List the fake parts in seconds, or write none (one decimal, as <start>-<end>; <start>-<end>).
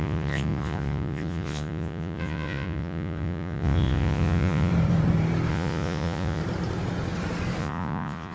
0.0-4.7; 5.5-6.4; 7.6-8.3